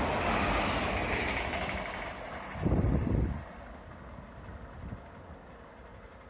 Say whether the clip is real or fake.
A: real